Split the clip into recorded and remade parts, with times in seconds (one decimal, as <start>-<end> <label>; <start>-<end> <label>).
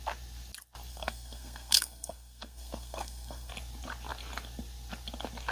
0.0-0.9 recorded; 0.9-3.5 remade; 3.5-5.5 recorded